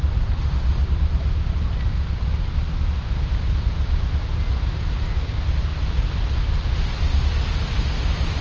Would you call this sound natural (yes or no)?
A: yes